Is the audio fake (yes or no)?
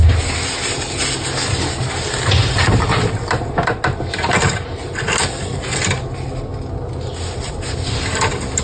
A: no